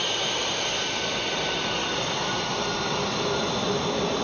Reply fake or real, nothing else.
real